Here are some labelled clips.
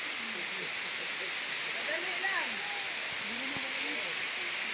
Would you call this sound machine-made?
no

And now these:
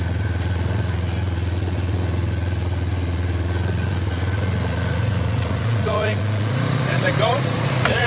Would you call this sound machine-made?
yes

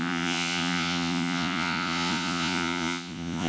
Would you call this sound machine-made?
yes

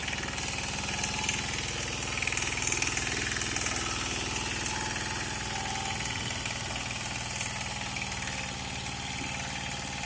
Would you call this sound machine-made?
no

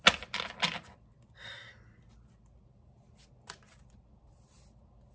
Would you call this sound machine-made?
no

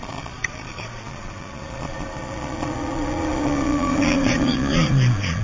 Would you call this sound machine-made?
yes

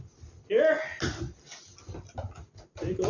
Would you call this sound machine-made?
no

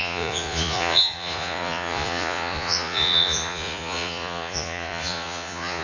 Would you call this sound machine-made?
yes